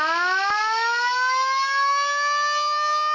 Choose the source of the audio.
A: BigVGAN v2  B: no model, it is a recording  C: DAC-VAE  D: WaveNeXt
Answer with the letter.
B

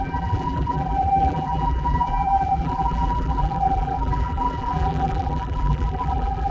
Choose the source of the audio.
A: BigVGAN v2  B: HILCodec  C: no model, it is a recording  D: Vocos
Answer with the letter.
A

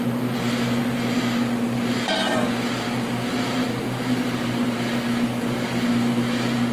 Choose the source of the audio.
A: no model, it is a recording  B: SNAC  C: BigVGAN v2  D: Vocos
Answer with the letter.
A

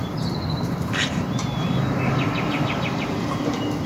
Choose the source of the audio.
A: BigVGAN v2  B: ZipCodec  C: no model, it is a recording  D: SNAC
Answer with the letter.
A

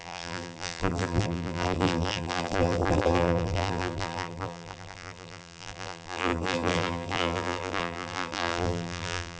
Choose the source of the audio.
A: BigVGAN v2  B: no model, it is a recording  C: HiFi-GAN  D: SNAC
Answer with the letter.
A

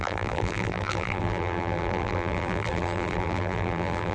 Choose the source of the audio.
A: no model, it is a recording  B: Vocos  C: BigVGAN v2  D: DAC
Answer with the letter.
C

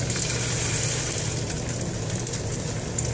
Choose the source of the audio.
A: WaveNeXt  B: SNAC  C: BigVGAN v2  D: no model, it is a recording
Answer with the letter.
C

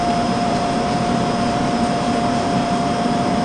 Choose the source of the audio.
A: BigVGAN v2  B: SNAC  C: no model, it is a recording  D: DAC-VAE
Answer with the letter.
A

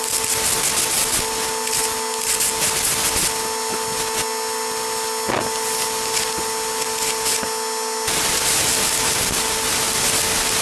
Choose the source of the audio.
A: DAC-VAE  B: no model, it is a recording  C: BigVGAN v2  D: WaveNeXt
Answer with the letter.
B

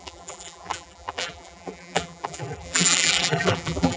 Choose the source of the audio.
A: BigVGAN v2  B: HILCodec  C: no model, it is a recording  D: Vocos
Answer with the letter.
A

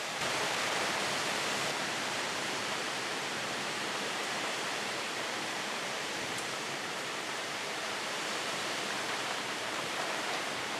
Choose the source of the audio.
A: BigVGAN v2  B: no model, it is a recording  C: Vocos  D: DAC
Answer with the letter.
A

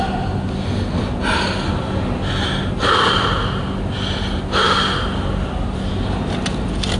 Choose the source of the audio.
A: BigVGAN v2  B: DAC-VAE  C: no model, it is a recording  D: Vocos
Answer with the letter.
C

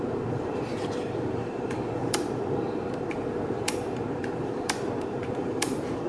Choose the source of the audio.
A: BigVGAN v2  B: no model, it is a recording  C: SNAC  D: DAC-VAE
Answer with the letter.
A